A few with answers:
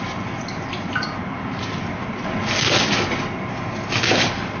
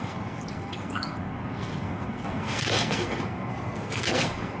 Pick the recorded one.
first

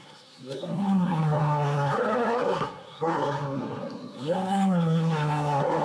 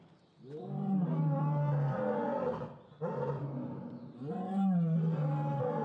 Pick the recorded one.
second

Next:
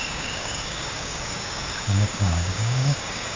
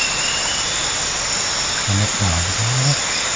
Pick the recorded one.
second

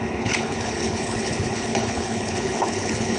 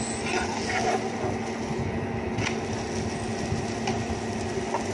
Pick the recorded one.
second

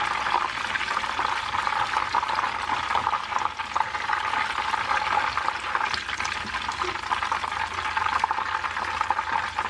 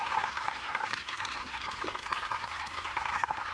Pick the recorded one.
first